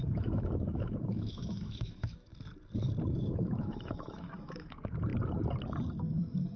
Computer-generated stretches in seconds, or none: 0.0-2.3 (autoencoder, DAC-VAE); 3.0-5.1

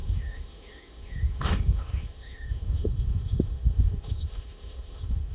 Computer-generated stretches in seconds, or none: 0.0-5.3 (autoencoder, DAC-VAE)

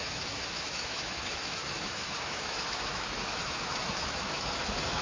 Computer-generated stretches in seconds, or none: 0.0-5.0 (autoencoder, DAC-VAE)

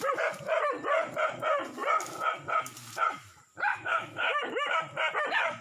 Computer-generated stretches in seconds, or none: 3.7-4.8 (autoencoder, DAC-VAE)

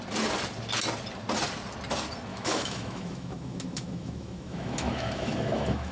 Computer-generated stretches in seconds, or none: 2.3-5.9 (autoencoder, DAC-VAE)

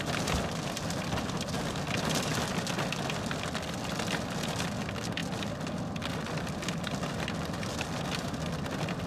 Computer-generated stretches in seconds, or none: none

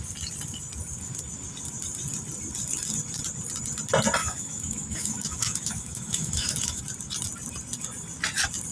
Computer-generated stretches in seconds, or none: 4.2-6.8 (autoencoder, DAC-VAE)

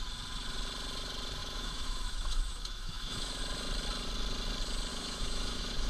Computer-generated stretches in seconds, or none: 1.4-3.4 (autoencoder, DAC-VAE); 4.9-5.9